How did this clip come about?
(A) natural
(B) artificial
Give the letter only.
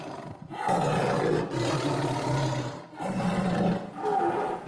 A